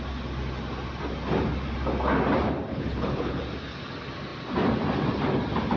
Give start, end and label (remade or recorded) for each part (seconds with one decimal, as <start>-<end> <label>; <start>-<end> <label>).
0.0-2.7 recorded; 2.7-3.4 remade; 3.4-5.8 recorded